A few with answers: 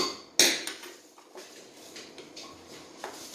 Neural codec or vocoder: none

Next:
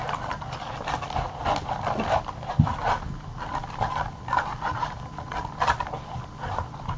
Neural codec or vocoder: none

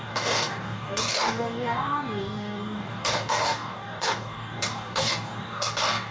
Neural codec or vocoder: codec, DAC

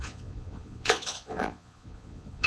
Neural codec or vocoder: vocoder, Vocos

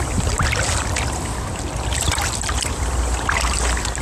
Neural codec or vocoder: vocoder, BigVGAN v2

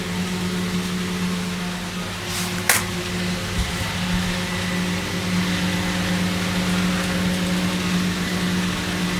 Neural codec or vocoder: none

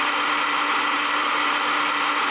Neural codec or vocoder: none